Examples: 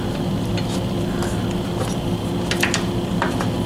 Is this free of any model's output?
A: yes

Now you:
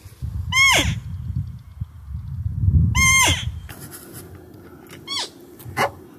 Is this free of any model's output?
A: yes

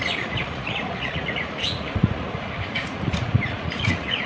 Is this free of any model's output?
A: no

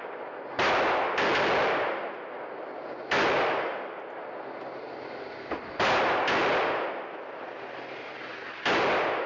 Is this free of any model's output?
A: yes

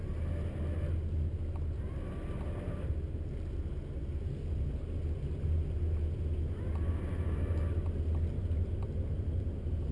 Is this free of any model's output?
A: yes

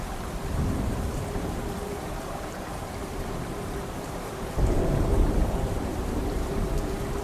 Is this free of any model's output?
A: no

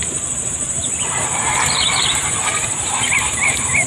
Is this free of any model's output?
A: yes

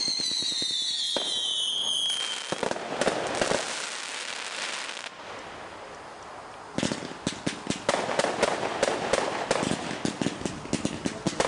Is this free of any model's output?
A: yes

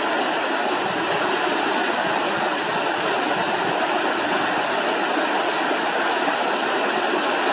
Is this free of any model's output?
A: yes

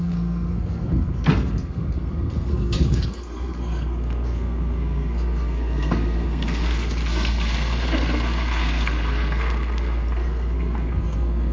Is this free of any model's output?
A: no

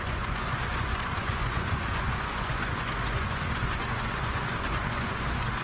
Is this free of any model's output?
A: no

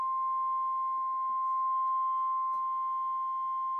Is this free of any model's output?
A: yes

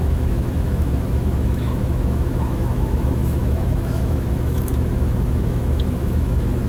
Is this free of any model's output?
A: no